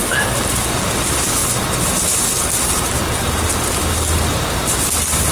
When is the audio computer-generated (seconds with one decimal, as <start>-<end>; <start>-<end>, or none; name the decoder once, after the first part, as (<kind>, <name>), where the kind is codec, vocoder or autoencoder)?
none